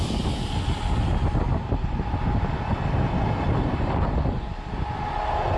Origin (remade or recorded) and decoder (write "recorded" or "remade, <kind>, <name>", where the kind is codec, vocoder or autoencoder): recorded